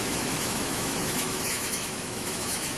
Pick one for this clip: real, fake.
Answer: fake